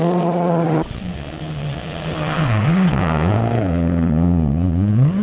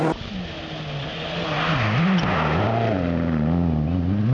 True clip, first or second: second